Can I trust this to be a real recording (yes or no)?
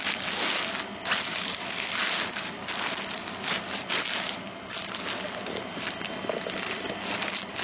yes